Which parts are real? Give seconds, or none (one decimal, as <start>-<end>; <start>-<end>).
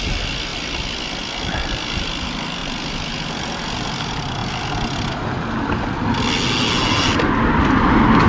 0.0-8.3